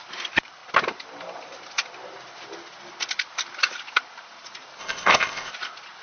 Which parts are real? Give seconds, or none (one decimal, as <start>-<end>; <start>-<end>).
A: 0.0-4.8; 5.5-6.0